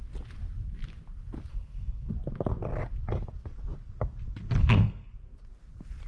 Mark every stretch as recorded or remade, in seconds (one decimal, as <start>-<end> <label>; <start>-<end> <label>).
0.0-1.5 recorded; 1.5-2.1 remade; 2.1-4.6 recorded; 4.6-5.1 remade; 5.1-6.1 recorded